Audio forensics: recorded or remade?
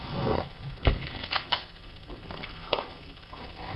remade